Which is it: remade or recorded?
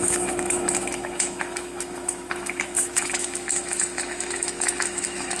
remade